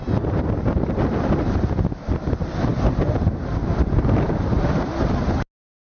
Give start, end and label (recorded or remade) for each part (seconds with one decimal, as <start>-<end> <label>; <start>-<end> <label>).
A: 0.0-5.9 recorded